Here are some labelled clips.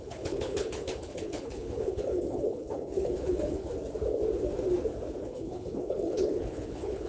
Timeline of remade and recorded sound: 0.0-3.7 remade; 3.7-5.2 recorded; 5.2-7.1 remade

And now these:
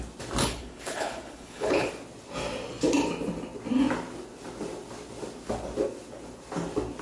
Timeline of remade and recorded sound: 0.0-0.4 recorded; 0.4-1.9 remade; 1.9-7.0 recorded

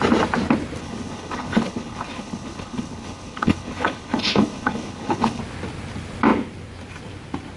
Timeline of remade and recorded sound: 0.0-0.8 recorded; 0.8-5.4 remade; 5.4-7.6 recorded

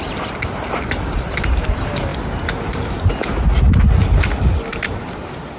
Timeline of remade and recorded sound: 0.0-5.6 recorded

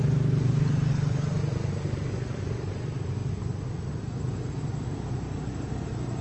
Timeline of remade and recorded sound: 0.0-6.2 recorded

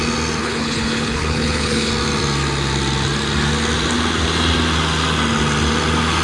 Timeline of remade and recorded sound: 0.0-0.4 recorded; 0.4-1.9 remade; 1.9-6.2 recorded

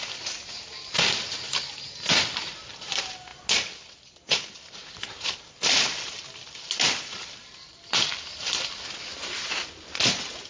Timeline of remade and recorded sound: 0.0-10.5 recorded

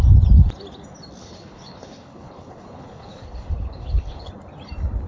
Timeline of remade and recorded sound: 0.0-1.2 recorded; 1.2-4.3 remade; 4.3-5.1 recorded